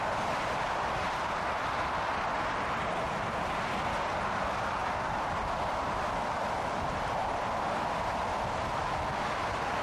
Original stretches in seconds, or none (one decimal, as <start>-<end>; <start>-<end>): 0.0-9.8